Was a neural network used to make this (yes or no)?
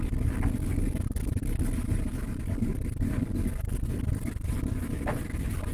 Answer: no